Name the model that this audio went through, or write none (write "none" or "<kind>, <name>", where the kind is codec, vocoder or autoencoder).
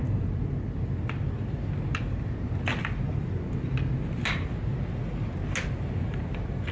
none